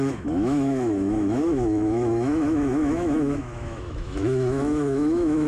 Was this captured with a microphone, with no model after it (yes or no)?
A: no